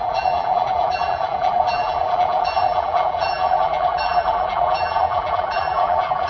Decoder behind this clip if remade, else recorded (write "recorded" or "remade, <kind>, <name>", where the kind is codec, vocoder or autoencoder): remade, vocoder, BigVGAN v2